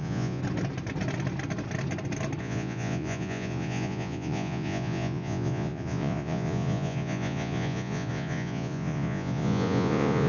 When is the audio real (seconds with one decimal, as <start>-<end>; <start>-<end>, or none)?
0.4-2.4